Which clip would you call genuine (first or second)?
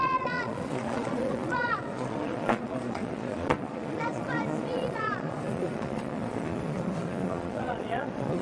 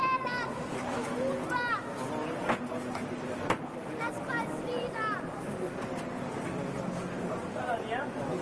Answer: second